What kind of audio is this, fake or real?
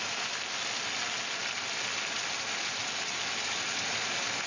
real